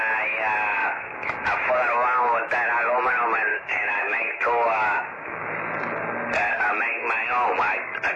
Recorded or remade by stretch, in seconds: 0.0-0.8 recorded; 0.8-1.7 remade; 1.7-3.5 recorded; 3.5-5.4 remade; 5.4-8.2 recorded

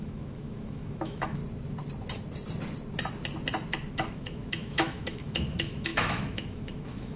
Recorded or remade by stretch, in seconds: 0.0-1.4 remade; 1.4-3.9 recorded; 3.9-7.2 remade

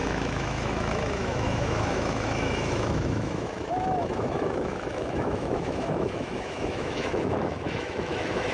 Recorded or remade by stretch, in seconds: 0.0-8.5 remade

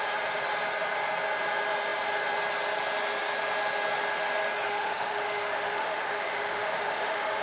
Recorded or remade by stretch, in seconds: 0.0-4.7 recorded; 4.7-7.4 remade

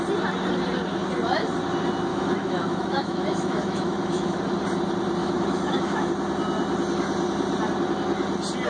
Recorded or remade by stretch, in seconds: 0.0-2.1 recorded; 2.1-4.4 remade; 4.4-5.2 recorded; 5.2-6.1 remade; 6.1-8.7 recorded